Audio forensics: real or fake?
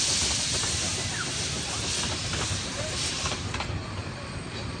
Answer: real